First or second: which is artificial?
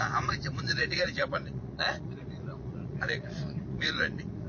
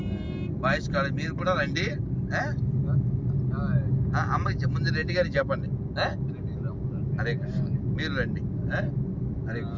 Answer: first